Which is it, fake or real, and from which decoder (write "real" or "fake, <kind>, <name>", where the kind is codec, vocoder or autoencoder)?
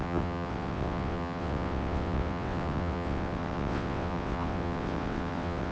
fake, vocoder, WaveNeXt